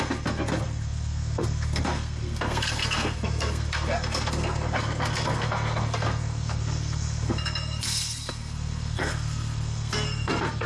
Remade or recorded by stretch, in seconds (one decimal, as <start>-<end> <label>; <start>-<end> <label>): 0.0-10.7 remade